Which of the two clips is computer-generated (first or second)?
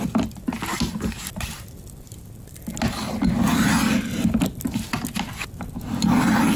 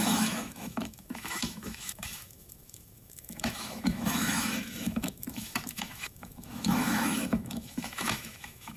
second